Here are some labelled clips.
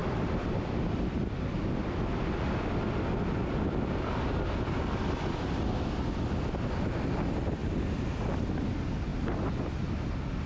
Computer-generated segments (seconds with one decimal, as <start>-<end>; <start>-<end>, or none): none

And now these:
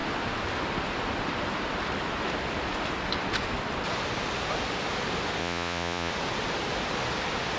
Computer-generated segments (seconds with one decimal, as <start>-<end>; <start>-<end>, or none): 5.4-6.1

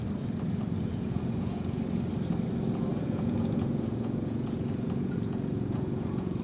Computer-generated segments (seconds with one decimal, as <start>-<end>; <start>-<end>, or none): 0.9-1.8; 2.9-6.4

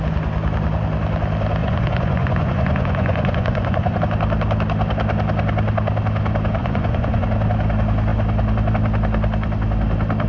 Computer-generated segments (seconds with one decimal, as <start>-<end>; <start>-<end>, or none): 1.6-4.0; 6.6-7.3

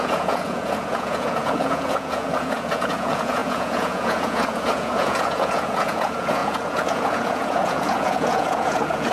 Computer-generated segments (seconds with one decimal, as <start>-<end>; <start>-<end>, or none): 0.0-9.1

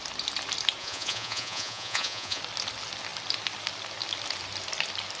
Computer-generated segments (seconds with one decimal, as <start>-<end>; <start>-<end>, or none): 0.8-2.4

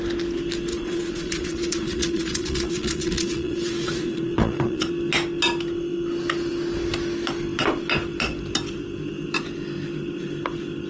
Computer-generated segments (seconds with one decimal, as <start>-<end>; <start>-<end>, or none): 0.7-4.9

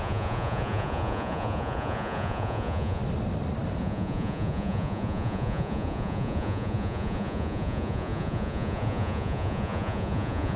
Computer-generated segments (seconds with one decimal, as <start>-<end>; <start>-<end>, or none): 0.0-3.0; 3.8-10.6